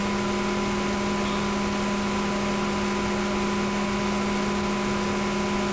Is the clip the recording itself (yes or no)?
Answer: yes